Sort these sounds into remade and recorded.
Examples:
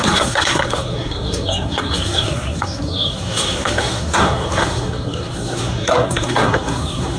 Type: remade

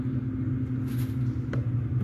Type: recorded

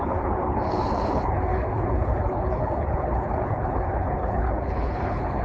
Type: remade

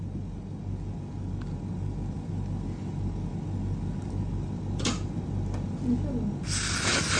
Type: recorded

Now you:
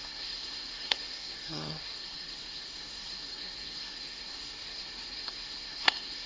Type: remade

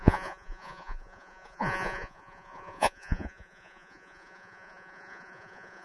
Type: remade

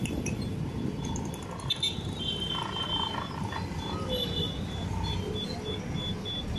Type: recorded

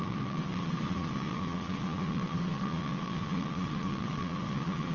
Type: remade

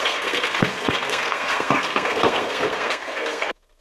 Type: remade